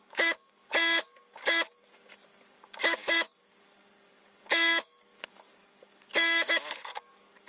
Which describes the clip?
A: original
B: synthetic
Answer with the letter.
B